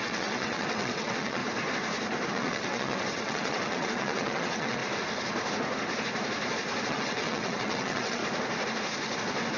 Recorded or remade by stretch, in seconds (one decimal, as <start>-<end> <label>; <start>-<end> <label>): 0.0-1.4 remade; 1.4-2.3 recorded; 2.3-4.8 remade; 4.8-6.9 recorded; 6.9-8.2 remade; 8.2-9.6 recorded